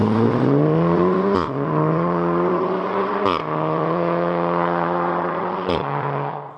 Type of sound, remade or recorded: remade